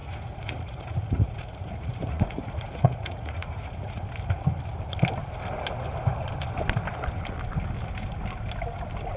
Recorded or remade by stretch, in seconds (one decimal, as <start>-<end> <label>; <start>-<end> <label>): 0.0-4.0 remade; 4.0-9.2 recorded